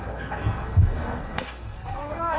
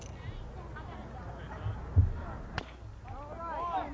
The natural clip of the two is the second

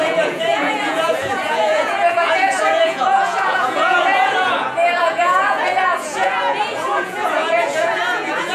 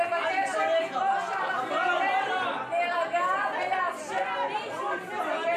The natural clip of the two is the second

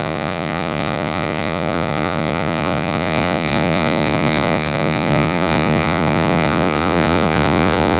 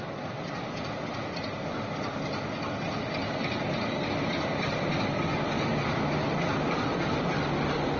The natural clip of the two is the second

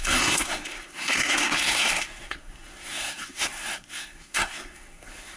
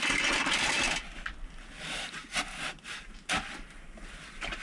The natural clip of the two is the second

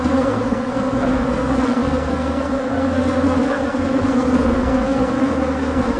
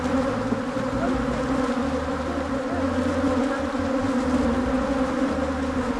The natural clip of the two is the second